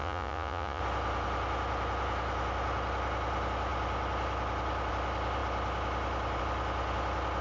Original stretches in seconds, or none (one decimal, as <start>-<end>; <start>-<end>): 0.8-7.4